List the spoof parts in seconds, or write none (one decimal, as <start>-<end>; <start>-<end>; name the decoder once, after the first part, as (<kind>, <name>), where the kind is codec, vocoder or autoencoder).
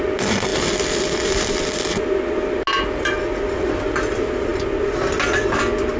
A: 0.0-0.5 (vocoder, BigVGAN v2); 4.1-4.5; 5.3-6.0